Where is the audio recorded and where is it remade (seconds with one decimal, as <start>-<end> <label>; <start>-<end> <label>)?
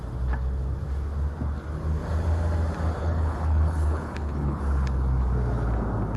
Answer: 0.0-3.0 recorded; 3.0-4.6 remade; 4.6-6.2 recorded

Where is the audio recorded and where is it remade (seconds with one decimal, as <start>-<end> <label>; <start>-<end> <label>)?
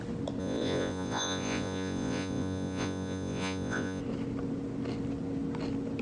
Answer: 0.0-0.4 recorded; 0.4-4.0 remade; 4.0-6.0 recorded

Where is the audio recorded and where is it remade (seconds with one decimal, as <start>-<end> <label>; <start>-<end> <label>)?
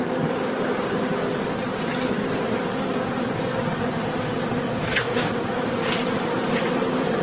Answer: 0.0-4.8 recorded; 4.8-5.3 remade; 5.3-7.2 recorded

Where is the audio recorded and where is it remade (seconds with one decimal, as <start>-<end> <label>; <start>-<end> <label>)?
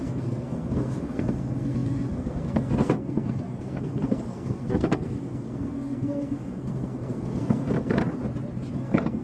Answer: 0.0-8.0 remade; 8.0-8.7 recorded; 8.7-9.2 remade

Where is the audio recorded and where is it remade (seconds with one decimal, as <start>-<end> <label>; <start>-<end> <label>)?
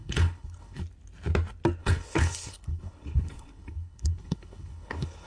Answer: 0.0-0.8 remade; 0.8-1.8 recorded; 1.8-5.3 remade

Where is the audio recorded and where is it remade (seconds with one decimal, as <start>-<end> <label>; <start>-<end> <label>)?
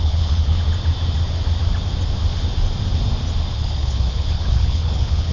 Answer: 0.0-0.6 remade; 0.6-3.5 recorded; 3.5-5.3 remade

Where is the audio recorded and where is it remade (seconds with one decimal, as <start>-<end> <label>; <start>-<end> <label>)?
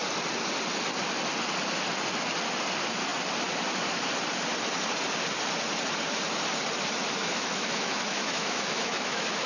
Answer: 0.0-7.2 recorded; 7.2-9.5 remade